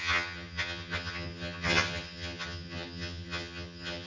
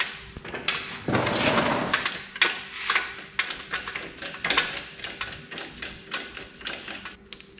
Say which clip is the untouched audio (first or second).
second